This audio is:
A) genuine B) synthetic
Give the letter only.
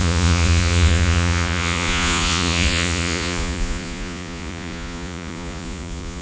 B